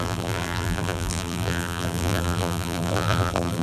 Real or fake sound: fake